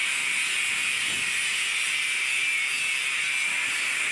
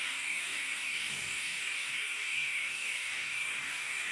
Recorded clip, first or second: first